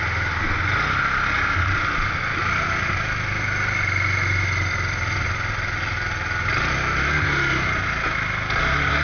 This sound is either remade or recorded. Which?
recorded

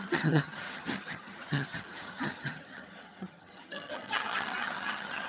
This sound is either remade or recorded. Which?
remade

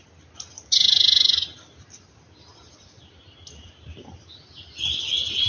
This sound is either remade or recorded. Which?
recorded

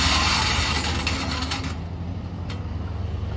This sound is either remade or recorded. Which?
recorded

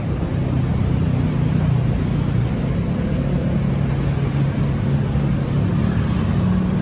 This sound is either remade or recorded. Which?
recorded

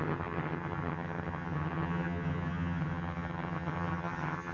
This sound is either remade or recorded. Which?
remade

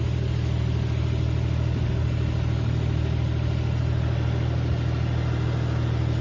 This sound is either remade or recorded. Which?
recorded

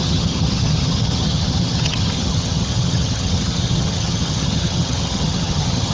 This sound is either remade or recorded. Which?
remade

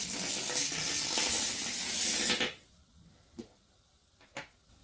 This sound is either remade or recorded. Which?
recorded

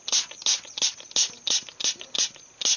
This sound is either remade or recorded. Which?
recorded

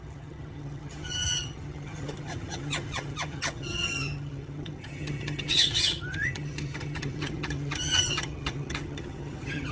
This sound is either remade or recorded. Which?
remade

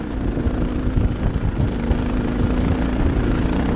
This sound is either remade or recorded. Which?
recorded